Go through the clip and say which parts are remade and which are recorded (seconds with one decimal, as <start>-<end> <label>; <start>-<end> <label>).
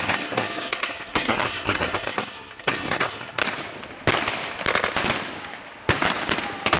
0.0-3.4 remade; 3.4-6.8 recorded